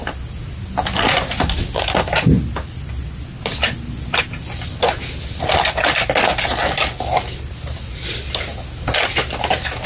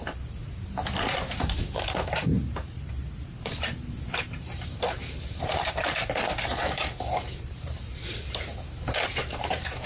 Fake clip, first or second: second